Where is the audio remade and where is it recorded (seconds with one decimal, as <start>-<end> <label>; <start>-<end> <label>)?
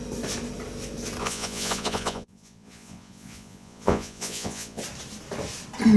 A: 0.0-1.2 recorded; 1.2-4.8 remade; 4.8-6.0 recorded